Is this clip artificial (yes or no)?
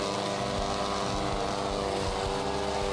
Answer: no